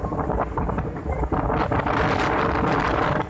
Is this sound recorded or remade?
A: recorded